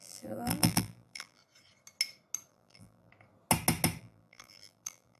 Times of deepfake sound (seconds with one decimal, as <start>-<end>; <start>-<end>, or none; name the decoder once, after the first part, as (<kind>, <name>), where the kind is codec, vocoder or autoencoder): 0.0-1.4 (vocoder, BigVGAN v2); 2.5-3.1; 4.0-5.2